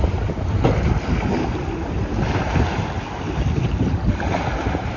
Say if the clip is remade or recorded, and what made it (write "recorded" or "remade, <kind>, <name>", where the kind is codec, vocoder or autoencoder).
recorded